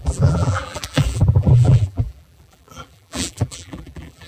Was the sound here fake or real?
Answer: fake